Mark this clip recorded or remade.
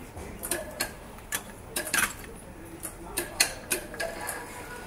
remade